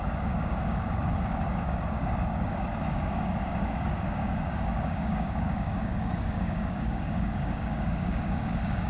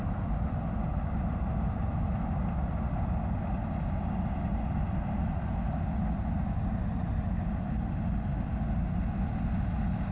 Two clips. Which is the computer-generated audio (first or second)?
first